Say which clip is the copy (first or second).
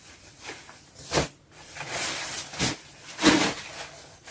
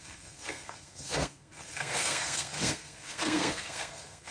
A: second